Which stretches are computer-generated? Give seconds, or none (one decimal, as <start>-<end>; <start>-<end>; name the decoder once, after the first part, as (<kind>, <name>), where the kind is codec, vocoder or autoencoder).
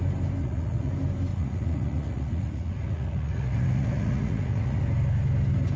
0.4-0.9 (vocoder, Vocos); 1.3-4.8